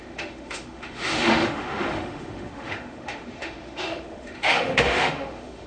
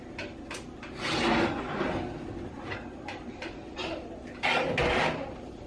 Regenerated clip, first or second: first